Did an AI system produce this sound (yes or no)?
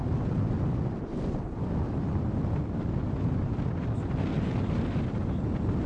no